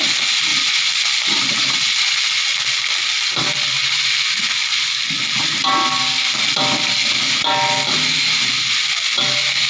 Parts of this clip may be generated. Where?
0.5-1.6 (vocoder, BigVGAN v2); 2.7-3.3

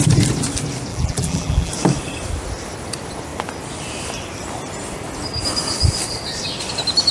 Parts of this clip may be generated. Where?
0.9-1.7 (vocoder, BigVGAN v2)

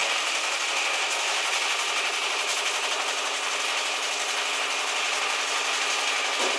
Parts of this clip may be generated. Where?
none

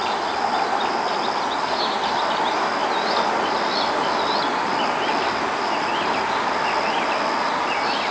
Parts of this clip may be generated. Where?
none

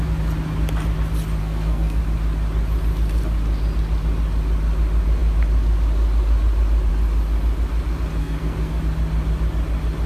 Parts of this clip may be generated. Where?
1.4-2.0 (codec, SNAC); 8.2-8.8